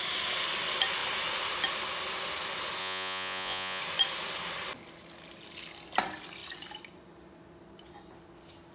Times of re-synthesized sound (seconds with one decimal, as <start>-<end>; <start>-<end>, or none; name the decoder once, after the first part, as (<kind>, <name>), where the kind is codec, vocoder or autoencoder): 2.8-3.8 (vocoder, Vocos)